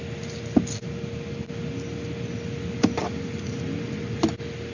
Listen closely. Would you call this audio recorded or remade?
recorded